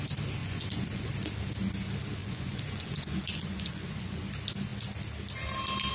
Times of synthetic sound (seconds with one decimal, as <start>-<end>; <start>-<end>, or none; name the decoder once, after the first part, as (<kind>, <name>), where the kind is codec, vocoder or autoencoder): 0.4-1.1 (vocoder, Vocos); 2.2-4.3